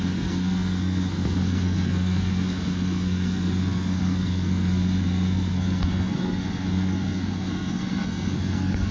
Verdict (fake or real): fake